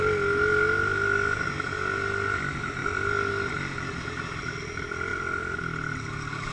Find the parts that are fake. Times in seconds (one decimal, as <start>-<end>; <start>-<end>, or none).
none